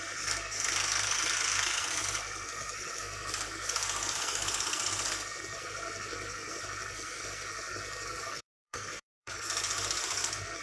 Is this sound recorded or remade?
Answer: remade